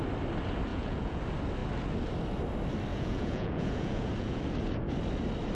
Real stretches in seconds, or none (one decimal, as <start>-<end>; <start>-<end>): 0.0-0.7; 1.2-2.9; 4.4-5.5